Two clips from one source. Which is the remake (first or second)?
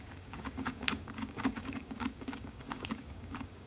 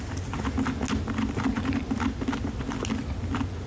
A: first